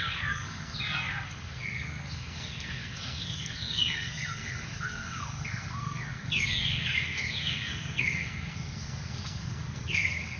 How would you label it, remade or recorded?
remade